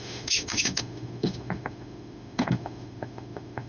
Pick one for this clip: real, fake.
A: fake